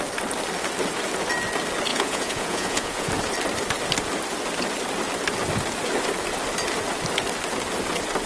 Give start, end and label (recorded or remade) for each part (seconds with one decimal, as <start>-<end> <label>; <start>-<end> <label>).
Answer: 0.0-1.9 recorded; 1.9-3.1 remade; 3.1-8.3 recorded